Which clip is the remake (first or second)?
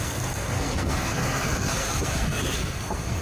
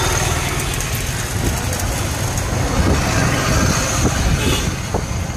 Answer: first